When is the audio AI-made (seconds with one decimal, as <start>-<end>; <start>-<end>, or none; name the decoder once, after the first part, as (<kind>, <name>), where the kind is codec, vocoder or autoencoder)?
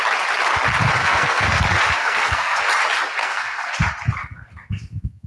1.0-1.6 (codec, SNAC); 2.0-2.6; 3.2-3.7; 4.2-5.3